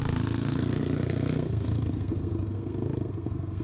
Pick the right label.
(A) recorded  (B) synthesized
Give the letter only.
B